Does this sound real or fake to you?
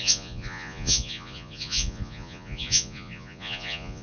fake